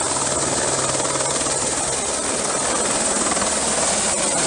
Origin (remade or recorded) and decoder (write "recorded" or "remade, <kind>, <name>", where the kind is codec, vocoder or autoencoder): recorded